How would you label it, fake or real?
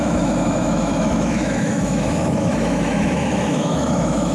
fake